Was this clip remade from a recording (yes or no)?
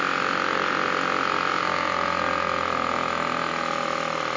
no